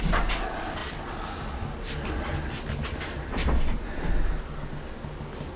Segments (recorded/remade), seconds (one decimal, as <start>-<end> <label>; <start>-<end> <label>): 0.0-5.6 recorded